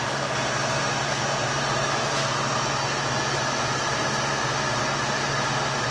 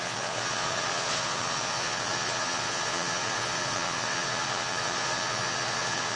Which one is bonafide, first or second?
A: first